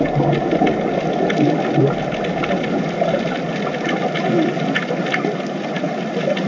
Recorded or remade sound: recorded